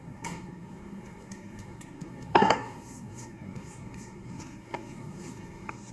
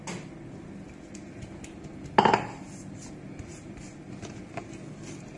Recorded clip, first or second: second